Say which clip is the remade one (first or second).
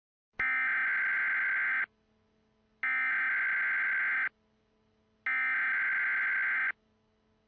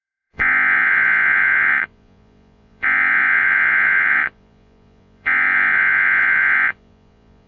second